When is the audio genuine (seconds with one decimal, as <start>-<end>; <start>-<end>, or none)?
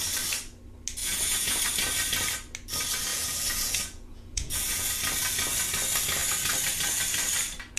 0.0-1.0; 1.6-3.1; 4.9-7.8